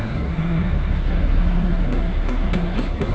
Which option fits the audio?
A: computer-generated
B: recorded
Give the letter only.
A